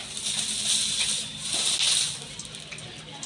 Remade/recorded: recorded